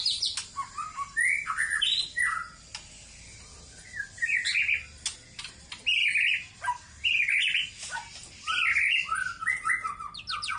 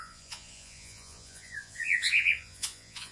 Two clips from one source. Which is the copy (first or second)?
second